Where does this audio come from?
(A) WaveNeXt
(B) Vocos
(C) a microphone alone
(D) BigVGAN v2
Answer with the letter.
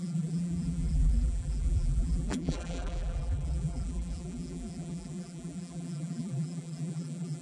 D